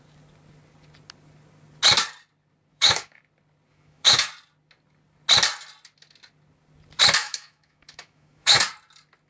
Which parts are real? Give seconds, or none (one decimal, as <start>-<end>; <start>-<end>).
0.0-2.7; 3.2-3.7; 4.3-7.2; 8.6-9.3